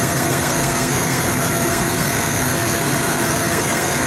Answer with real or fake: fake